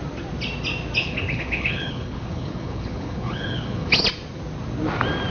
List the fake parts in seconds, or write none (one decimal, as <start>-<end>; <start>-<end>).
1.0-3.9